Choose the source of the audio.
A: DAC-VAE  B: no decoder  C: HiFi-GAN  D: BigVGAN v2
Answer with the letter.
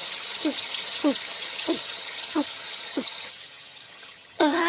C